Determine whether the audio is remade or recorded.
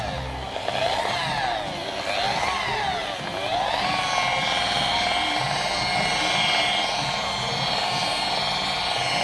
recorded